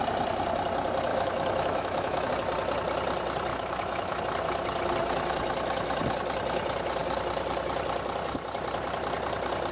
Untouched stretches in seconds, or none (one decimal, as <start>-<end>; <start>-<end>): 0.0-1.1; 2.3-3.5; 4.2-9.7